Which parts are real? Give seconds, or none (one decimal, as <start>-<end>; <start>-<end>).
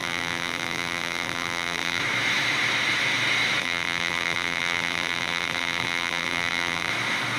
2.0-3.6; 6.9-7.4